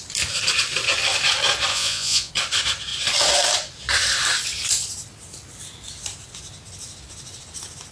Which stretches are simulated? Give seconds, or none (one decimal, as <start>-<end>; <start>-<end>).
1.7-2.3

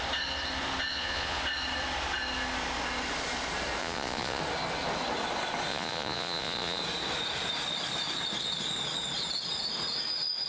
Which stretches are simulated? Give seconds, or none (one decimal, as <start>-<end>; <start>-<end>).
0.9-1.4; 3.8-4.4; 5.7-6.8

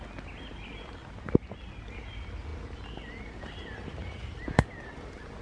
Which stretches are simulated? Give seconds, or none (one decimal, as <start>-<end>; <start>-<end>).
none

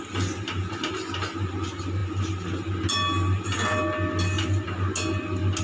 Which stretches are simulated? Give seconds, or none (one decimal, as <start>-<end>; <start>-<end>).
none

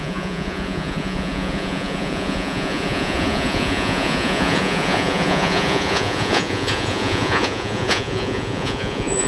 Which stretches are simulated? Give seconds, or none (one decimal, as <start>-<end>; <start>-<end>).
0.0-9.3

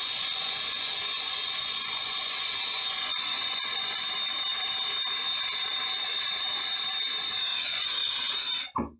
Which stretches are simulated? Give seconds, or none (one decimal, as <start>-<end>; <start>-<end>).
0.0-4.0; 7.5-8.3

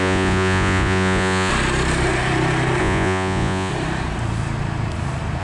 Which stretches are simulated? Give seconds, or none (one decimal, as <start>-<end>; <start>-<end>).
0.0-1.5; 2.8-3.7

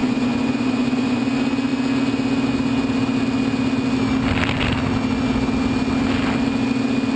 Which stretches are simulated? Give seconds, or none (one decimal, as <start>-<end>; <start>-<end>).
0.0-1.2